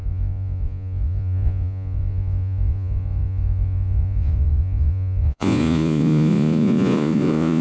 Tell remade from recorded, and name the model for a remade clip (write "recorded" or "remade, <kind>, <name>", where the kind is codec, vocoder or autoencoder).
remade, vocoder, Vocos